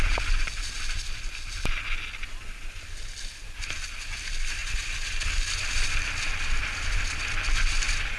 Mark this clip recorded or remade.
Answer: recorded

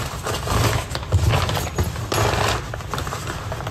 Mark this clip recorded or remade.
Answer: recorded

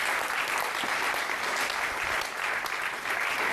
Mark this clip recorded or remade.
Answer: recorded